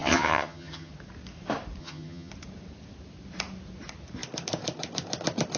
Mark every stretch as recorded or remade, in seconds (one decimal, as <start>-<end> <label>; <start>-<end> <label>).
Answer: 0.0-0.9 remade; 0.9-1.8 recorded; 1.8-2.3 remade; 2.3-5.6 recorded